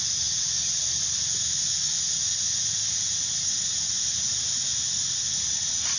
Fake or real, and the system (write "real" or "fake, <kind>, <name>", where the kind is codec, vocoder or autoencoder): real